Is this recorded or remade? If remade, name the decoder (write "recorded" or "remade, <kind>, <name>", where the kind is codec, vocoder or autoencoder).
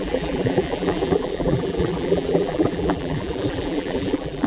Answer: remade, vocoder, BigVGAN v2